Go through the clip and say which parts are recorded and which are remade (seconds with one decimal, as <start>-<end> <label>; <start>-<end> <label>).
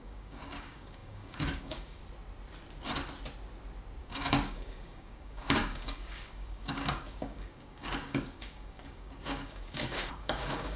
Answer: 0.0-2.0 remade; 2.0-4.0 recorded; 4.0-10.8 remade